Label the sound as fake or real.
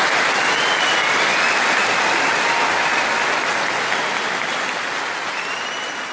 real